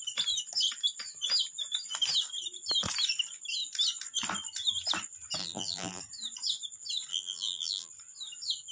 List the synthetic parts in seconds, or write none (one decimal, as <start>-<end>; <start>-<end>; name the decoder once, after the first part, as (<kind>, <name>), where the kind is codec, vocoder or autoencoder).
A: 5.4-6.0 (vocoder, BigVGAN v2); 7.1-7.9

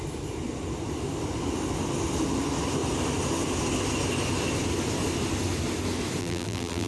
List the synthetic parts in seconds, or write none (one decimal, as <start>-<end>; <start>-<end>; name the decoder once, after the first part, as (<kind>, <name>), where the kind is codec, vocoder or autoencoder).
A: 6.2-6.9 (vocoder, BigVGAN v2)

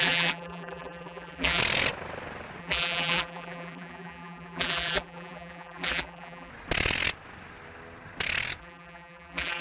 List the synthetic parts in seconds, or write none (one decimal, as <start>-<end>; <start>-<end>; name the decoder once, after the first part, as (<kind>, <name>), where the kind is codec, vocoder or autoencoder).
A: 0.0-1.6 (vocoder, BigVGAN v2); 2.6-6.5; 8.6-9.6

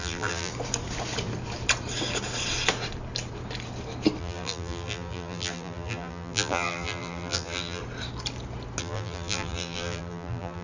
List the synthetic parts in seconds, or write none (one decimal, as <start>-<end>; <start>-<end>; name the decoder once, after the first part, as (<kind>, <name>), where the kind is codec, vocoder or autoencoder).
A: 0.0-0.5 (vocoder, BigVGAN v2); 4.2-7.8; 8.8-10.6

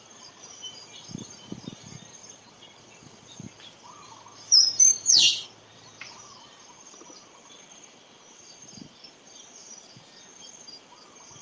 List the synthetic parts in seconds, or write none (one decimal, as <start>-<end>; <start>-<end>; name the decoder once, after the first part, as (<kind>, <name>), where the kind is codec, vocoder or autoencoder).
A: 0.0-11.4 (vocoder, BigVGAN v2)